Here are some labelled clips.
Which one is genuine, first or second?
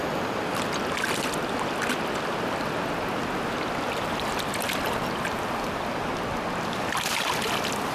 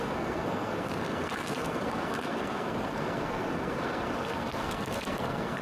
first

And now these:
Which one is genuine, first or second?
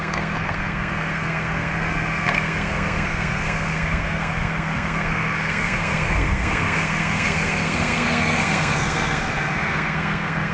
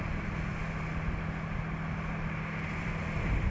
second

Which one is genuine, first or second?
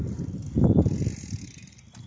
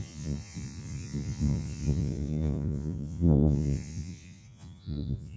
first